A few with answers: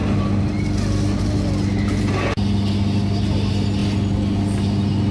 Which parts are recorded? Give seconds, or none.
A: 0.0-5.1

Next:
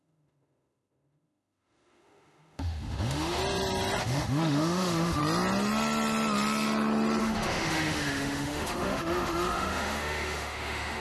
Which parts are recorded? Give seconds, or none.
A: 3.4-4.0; 5.2-7.2

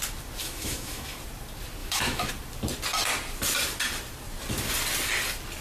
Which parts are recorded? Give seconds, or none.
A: 0.0-0.4; 1.2-1.8; 2.3-5.6

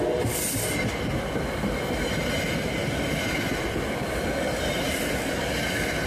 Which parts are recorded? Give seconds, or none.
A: 0.0-6.1

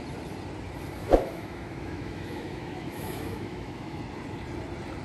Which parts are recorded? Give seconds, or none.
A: 0.0-1.0; 4.0-5.0